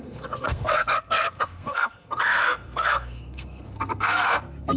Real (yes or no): no